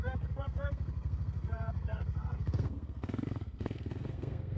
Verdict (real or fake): fake